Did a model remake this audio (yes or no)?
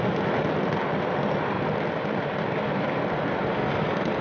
no